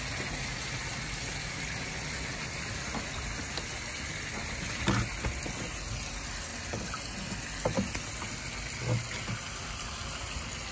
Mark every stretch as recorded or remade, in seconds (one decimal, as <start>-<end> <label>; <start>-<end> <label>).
0.0-10.7 recorded